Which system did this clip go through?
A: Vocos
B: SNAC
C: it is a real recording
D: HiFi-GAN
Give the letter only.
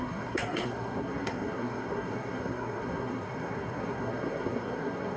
B